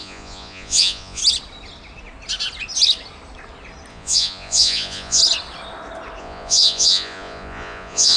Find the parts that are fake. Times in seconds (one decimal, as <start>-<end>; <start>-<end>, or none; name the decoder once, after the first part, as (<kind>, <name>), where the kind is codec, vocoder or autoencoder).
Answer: 0.0-1.2 (vocoder, Vocos); 3.9-5.2; 6.2-8.2